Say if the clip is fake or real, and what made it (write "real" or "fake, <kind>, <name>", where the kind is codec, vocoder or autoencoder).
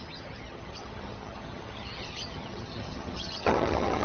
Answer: fake, vocoder, HiFi-GAN